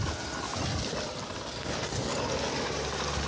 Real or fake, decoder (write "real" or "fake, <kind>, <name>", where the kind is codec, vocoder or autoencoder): real